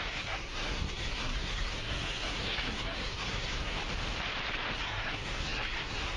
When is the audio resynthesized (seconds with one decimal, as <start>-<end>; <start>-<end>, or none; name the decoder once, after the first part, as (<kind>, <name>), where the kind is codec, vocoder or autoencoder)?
0.0-3.8 (codec, SNAC); 4.8-6.2